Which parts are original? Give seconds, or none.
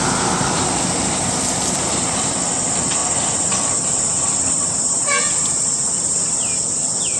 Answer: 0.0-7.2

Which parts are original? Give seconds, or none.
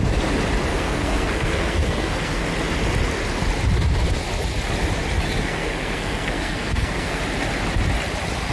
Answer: 0.0-0.7; 2.4-5.4; 7.2-8.5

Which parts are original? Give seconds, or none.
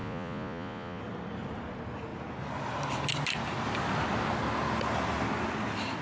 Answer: 1.0-6.0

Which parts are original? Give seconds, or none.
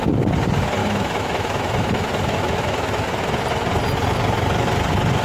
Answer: 0.0-0.8; 3.4-5.2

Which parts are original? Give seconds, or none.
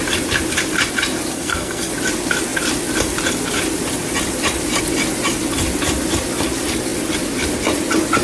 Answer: 0.0-1.3; 1.9-8.2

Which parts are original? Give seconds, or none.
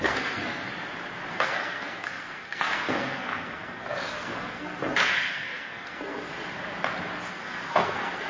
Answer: 0.7-1.3; 6.3-7.3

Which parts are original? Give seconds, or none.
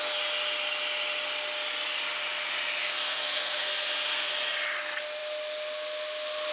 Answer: 0.0-2.8; 4.3-6.5